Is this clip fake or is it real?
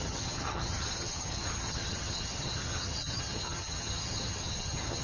fake